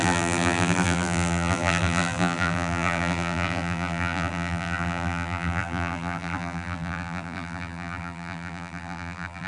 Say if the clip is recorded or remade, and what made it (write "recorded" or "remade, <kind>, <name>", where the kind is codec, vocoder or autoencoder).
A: remade, vocoder, BigVGAN v2